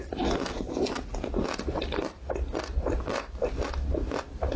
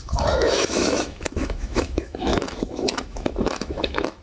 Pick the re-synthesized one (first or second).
second